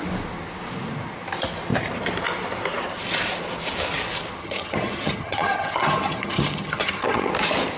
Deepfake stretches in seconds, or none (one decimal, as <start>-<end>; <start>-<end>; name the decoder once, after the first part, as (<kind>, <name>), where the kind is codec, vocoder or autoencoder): 4.4-7.3 (vocoder, HiFi-GAN)